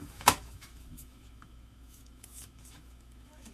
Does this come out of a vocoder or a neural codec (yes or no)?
yes